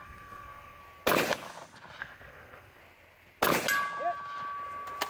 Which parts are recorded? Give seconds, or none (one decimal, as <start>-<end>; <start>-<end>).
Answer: 0.8-2.0; 2.8-5.1

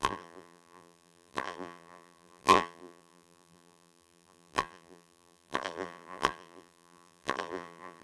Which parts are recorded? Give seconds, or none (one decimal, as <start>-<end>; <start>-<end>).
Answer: none

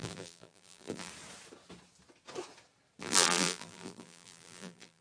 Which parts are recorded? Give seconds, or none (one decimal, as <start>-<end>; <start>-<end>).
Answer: 1.1-3.0

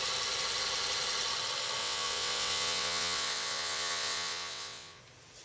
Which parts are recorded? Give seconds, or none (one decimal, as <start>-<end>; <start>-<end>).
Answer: 0.0-1.8; 5.0-5.4

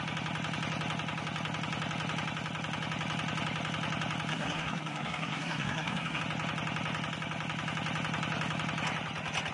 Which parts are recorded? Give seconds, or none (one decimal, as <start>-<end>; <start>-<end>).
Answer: 0.0-4.3; 6.2-9.5

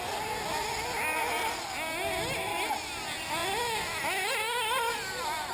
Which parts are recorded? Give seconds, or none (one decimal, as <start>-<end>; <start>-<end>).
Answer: 0.0-5.5

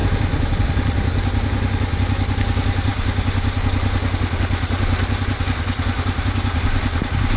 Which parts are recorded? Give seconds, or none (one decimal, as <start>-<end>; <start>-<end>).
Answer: 0.0-7.4